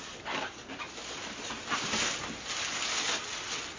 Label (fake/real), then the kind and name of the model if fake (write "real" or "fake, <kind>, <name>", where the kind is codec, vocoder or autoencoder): real